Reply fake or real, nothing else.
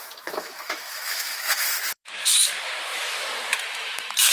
fake